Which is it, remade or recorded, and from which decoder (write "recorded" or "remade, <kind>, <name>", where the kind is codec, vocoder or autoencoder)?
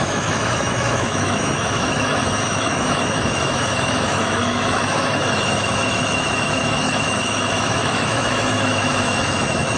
remade, autoencoder, DAC-VAE